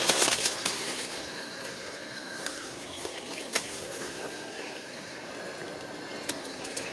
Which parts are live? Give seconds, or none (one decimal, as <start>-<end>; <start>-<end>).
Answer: 5.3-6.3